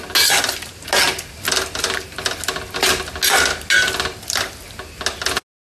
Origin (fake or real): real